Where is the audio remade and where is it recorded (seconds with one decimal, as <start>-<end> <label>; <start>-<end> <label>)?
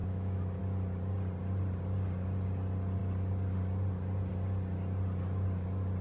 0.0-0.6 remade; 0.6-6.0 recorded